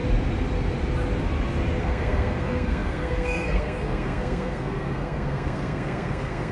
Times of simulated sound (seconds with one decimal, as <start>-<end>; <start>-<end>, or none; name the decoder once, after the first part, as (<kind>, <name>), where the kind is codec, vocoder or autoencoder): 1.8-6.5 (codec, SNAC)